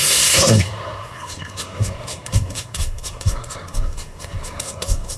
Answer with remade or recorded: remade